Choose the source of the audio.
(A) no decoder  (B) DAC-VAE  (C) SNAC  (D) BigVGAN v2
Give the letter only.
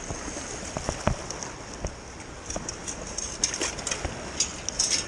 A